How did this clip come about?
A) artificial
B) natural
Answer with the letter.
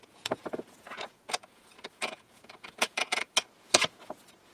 A